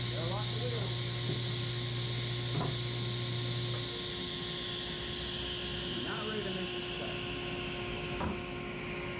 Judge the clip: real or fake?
real